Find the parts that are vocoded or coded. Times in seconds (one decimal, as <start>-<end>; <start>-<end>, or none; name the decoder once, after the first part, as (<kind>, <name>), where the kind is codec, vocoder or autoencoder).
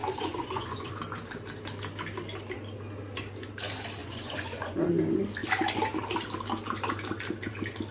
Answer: 0.0-0.9 (vocoder, Vocos); 4.0-4.9